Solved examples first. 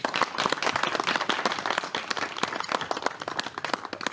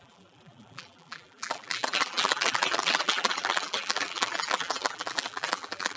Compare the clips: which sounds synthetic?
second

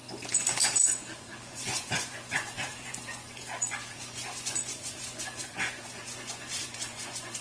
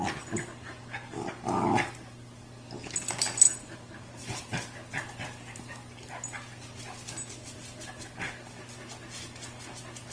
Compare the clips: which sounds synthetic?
first